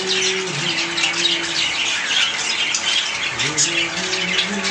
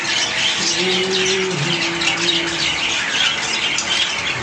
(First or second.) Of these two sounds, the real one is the first